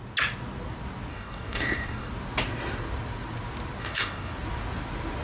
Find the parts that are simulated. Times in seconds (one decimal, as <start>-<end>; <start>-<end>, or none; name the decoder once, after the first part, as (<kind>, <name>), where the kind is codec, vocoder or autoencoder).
1.1-2.1 (codec, DAC); 3.8-4.3